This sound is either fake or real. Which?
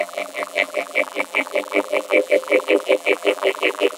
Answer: fake